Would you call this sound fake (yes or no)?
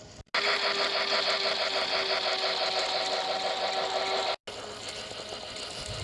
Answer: no